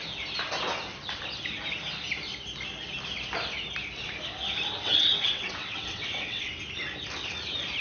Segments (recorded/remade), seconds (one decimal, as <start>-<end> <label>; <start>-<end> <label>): 0.0-4.8 recorded; 4.8-6.5 remade; 6.5-7.8 recorded